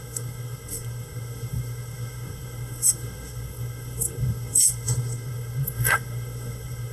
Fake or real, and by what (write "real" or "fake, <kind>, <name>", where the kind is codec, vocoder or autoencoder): fake, codec, SNAC